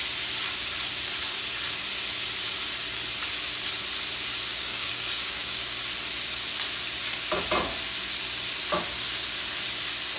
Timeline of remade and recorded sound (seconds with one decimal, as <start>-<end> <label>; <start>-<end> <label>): 0.0-4.5 recorded; 4.5-5.8 remade; 5.8-10.2 recorded